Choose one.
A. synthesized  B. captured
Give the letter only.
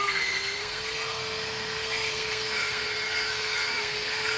A